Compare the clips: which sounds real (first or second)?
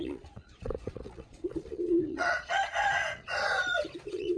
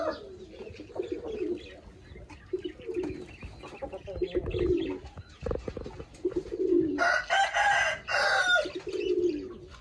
second